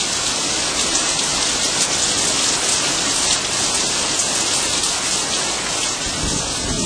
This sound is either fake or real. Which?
real